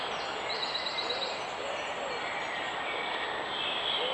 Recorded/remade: recorded